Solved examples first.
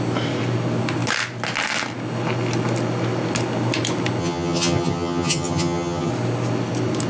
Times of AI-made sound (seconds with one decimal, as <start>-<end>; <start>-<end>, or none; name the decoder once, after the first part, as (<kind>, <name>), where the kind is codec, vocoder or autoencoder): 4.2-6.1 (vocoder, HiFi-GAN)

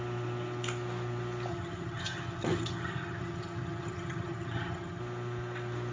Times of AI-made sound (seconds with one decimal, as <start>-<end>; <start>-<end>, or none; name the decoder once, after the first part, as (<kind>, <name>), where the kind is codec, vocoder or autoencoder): 1.5-5.0 (vocoder, HiFi-GAN)

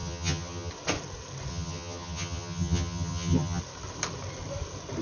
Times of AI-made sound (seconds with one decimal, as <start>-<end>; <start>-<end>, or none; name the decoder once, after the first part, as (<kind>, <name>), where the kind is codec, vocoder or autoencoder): 0.0-0.7 (vocoder, HiFi-GAN); 1.5-3.6

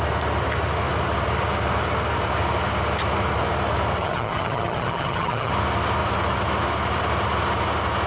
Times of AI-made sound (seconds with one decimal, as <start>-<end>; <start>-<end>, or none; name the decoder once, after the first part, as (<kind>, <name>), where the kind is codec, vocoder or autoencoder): 4.0-5.5 (vocoder, HiFi-GAN)